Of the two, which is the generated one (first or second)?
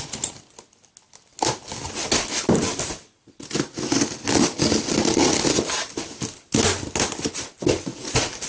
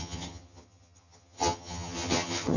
second